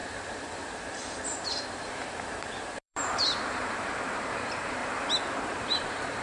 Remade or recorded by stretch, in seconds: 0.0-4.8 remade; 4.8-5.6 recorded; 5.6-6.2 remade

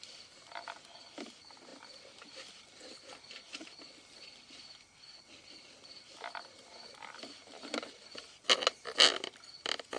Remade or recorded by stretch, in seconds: 0.0-10.0 recorded

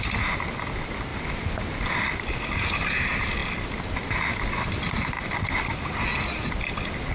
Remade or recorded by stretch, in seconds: 0.0-3.4 recorded; 3.4-6.0 remade; 6.0-7.1 recorded

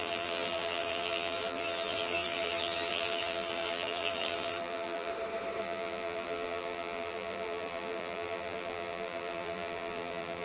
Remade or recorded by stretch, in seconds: 0.0-5.1 remade; 5.1-5.6 recorded; 5.6-10.4 remade

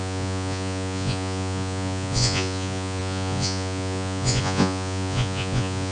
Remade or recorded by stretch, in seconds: 0.0-5.9 remade

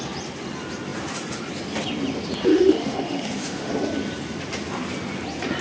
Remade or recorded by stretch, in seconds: 0.0-2.5 recorded; 2.5-3.7 remade; 3.7-5.6 recorded